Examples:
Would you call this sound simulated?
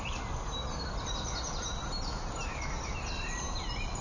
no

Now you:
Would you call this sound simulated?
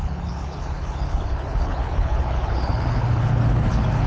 yes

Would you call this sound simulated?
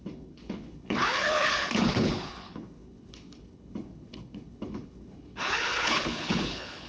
yes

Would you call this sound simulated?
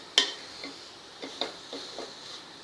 no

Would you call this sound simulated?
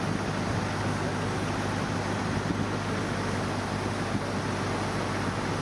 no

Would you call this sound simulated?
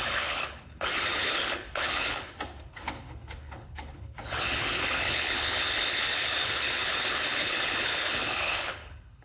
yes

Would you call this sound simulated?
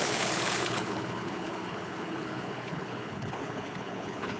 yes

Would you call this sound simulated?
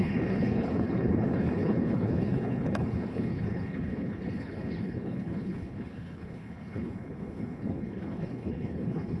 yes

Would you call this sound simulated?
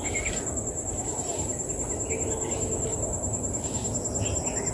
no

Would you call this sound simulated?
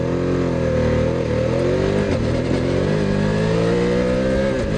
no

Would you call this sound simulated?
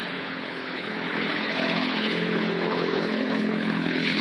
yes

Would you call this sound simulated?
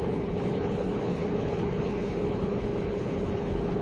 yes